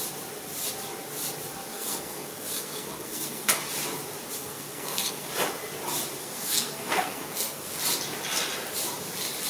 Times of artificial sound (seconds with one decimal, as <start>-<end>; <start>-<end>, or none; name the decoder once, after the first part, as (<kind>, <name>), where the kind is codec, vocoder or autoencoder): 1.7-3.6 (codec, SNAC); 4.4-5.3; 6.2-7.8